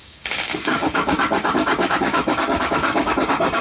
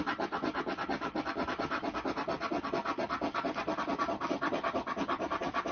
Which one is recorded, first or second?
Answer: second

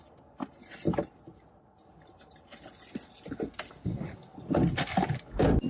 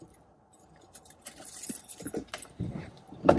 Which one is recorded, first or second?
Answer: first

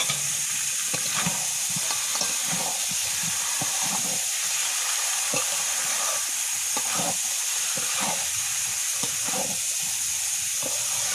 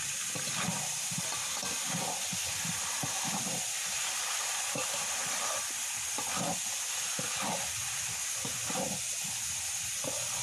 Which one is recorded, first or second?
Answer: second